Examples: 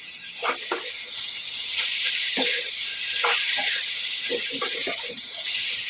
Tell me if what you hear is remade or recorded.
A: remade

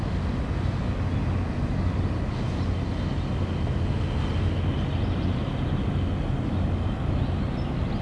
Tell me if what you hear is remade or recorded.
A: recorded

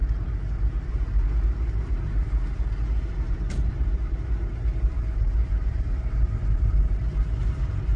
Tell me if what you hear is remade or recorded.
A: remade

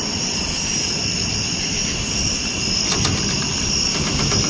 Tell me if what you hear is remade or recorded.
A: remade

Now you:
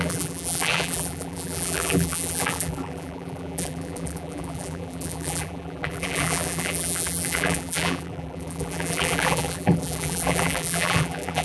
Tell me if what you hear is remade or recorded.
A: remade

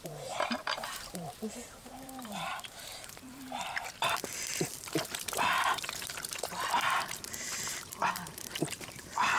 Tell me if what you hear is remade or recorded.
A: remade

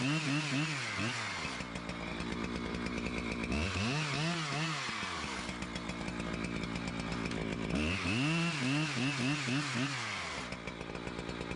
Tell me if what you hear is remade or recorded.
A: recorded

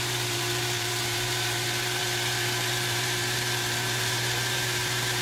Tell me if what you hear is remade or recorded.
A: remade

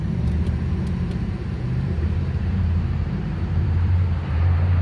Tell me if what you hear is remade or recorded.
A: remade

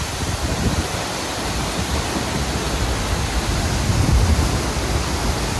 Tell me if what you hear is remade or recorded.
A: recorded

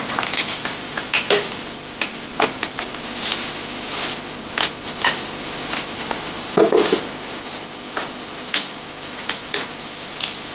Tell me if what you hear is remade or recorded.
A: recorded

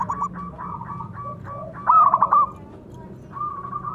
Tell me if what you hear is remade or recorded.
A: recorded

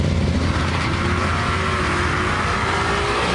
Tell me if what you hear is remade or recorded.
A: recorded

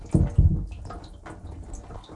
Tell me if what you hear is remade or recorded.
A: recorded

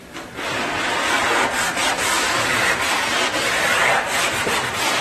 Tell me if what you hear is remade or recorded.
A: remade